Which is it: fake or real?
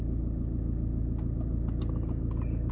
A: real